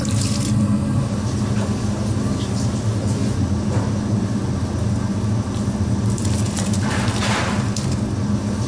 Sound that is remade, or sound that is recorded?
recorded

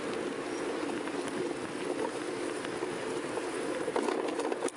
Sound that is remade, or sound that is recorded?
recorded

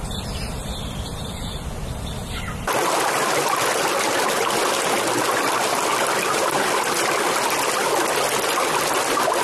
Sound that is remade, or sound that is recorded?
recorded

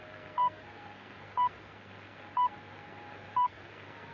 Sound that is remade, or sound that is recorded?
remade